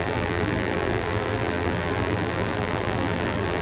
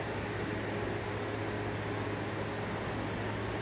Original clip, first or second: second